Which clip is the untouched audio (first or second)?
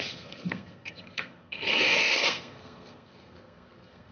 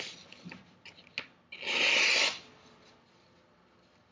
second